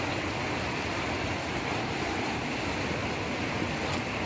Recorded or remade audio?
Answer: recorded